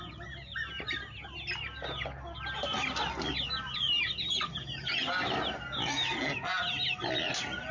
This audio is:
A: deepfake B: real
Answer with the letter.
B